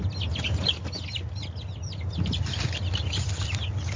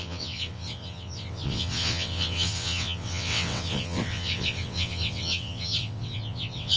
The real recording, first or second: first